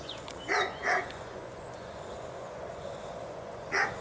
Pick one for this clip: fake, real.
fake